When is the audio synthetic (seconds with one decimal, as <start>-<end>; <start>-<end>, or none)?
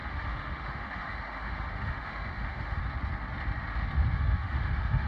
0.0-2.8; 4.1-5.1